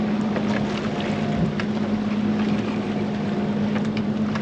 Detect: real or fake real